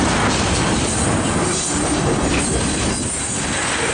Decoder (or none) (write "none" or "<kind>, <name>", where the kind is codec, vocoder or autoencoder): none